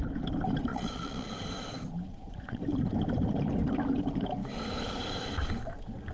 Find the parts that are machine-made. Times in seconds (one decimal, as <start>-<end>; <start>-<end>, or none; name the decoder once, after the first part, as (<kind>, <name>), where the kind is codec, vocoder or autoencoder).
0.7-1.3 (vocoder, Vocos); 2.1-2.6